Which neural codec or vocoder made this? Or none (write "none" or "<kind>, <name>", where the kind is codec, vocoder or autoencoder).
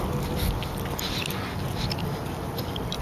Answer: none